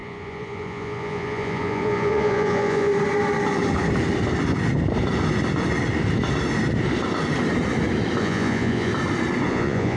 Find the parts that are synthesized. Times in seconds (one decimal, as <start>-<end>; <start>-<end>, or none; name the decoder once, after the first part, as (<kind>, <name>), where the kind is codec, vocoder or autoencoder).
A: 0.0-2.9 (vocoder, Vocos); 8.2-8.9; 9.5-10.0